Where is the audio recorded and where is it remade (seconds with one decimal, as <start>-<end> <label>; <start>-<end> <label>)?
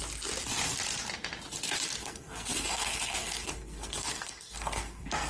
0.0-2.0 recorded; 2.0-5.3 remade